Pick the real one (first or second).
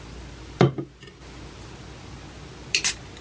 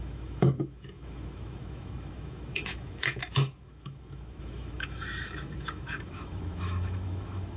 first